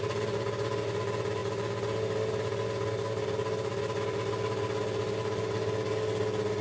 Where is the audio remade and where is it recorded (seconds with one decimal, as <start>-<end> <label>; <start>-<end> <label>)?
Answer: 0.0-6.6 recorded